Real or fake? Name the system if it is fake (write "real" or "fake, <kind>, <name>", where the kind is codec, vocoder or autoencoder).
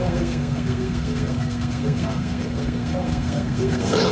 fake, codec, SNAC